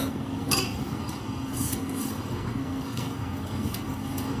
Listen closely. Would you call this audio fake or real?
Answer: fake